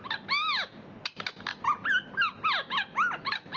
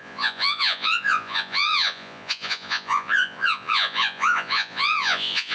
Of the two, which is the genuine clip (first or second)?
first